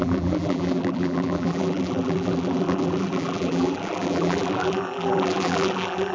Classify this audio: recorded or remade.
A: remade